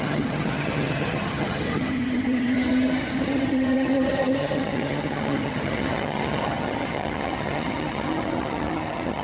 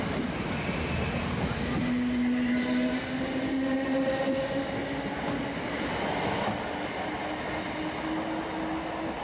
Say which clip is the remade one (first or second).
first